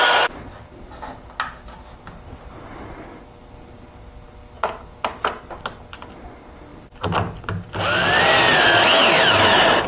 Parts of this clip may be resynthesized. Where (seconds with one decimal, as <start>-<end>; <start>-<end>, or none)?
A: none